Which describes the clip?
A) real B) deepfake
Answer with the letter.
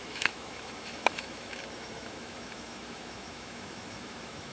B